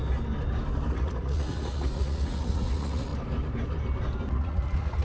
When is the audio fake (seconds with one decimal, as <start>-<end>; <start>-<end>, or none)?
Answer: 0.9-3.1; 4.3-5.0